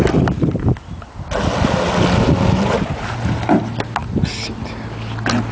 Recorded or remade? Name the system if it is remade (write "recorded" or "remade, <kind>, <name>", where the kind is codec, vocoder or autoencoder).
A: recorded